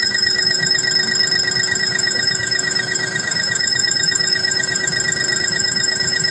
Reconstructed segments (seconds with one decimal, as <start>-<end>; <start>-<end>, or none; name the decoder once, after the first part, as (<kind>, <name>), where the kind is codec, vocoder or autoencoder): 0.0-0.8 (autoencoder, DAC-VAE); 1.8-4.9; 5.4-6.3